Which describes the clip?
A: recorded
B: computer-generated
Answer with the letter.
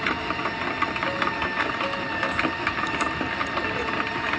A